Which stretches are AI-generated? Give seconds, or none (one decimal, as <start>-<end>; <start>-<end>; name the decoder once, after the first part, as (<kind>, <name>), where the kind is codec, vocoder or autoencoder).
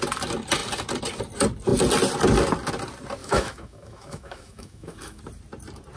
3.2-5.2 (autoencoder, DAC-VAE)